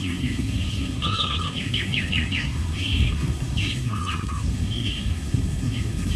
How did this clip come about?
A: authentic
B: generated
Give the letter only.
B